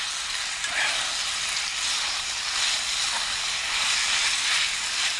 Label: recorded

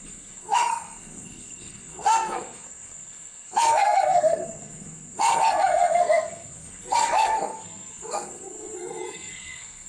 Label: remade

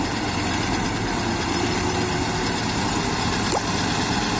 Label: recorded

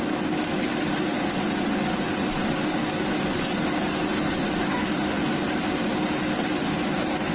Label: recorded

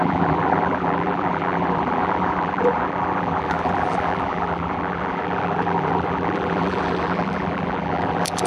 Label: remade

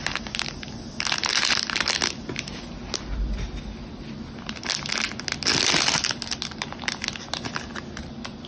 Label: recorded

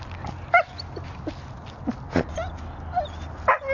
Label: recorded